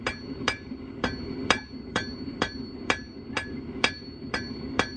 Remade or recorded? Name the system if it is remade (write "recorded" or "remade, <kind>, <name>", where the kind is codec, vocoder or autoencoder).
remade, vocoder, BigVGAN v2